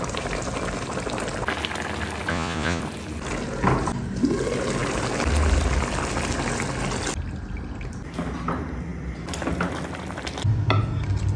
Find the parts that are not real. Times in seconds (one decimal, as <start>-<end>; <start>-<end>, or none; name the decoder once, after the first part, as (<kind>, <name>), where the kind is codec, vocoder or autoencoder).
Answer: 2.3-2.8 (vocoder, Vocos)